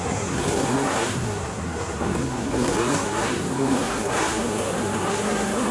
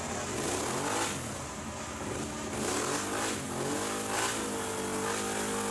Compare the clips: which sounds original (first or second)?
second